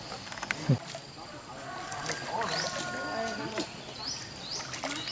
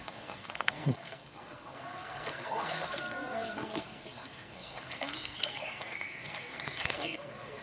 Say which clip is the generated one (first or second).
second